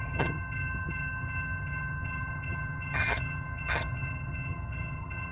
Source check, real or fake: fake